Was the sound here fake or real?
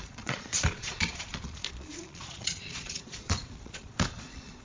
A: fake